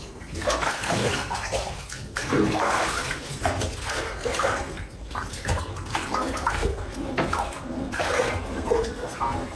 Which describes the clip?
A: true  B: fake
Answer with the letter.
B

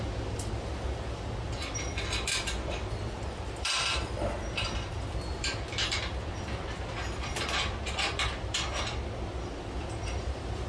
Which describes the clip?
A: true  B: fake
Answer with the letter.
B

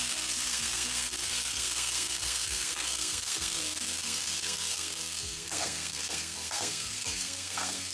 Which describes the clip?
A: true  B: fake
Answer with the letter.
B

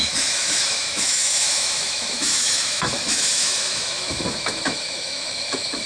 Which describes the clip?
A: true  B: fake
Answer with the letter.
B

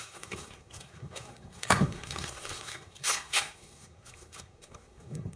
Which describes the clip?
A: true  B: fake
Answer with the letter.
B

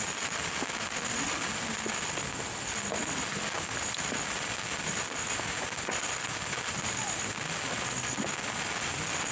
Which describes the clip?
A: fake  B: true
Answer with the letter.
B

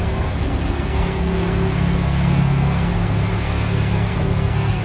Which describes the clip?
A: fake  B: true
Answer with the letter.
A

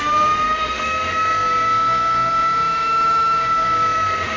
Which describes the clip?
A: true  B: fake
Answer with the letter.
B